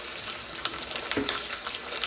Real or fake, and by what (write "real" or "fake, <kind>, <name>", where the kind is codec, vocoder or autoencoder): real